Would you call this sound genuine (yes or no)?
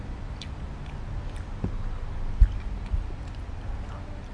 yes